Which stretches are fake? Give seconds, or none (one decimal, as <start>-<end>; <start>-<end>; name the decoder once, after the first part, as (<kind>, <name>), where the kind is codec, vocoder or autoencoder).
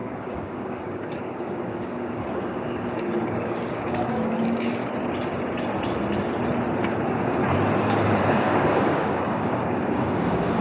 0.0-4.8 (codec, DAC); 6.9-7.4; 8.3-10.6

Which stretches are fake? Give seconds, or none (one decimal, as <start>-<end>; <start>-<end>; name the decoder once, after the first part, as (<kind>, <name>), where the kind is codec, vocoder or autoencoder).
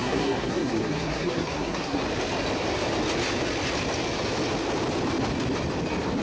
0.0-2.0 (codec, SNAC)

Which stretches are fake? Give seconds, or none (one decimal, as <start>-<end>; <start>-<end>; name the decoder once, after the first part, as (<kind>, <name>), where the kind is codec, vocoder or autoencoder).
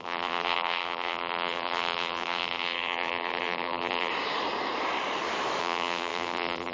0.0-4.1 (vocoder, BigVGAN v2); 5.6-6.7